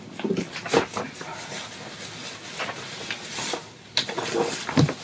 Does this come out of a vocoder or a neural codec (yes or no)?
no